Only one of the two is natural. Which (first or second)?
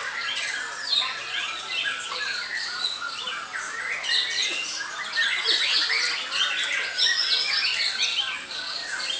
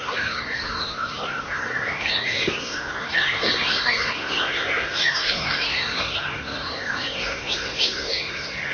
first